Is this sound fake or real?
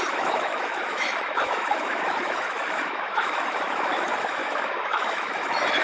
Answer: fake